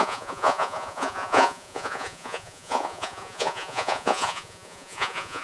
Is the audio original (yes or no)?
no